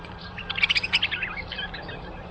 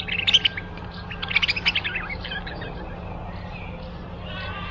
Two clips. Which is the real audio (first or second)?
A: second